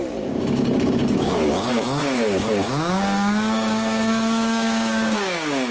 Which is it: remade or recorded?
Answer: remade